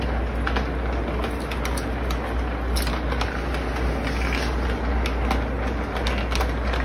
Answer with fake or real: real